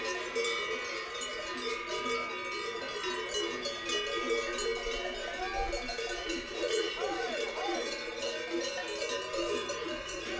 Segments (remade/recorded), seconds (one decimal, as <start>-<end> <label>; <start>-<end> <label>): 0.0-6.2 recorded; 6.2-8.1 remade; 8.1-9.6 recorded; 9.6-10.4 remade